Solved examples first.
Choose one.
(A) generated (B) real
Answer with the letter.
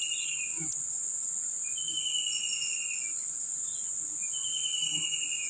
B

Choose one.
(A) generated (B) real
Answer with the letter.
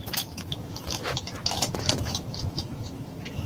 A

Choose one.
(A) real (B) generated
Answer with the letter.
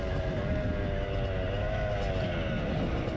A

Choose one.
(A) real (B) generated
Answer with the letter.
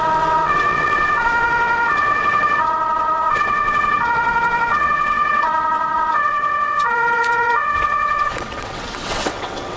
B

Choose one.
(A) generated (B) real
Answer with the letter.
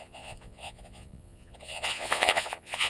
A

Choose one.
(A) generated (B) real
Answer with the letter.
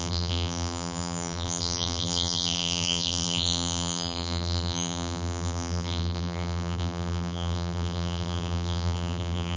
A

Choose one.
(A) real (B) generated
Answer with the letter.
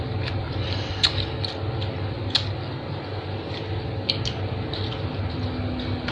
A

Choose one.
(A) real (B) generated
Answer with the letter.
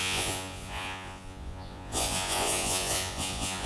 B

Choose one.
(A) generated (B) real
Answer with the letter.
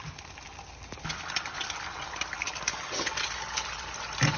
B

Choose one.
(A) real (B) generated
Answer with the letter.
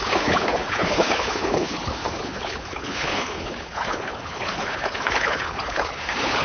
B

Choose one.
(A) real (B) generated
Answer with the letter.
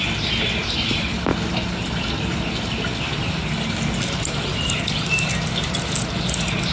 A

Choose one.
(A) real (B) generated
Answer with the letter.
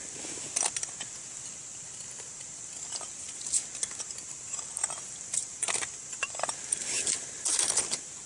B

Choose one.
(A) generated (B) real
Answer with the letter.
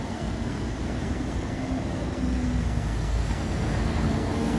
A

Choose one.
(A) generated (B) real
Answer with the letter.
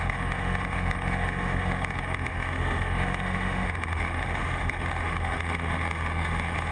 A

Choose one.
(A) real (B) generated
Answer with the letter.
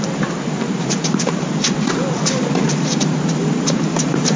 B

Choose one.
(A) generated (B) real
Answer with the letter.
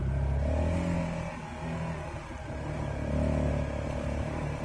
B